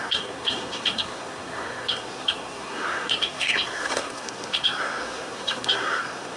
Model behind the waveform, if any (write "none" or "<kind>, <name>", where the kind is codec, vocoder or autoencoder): codec, SNAC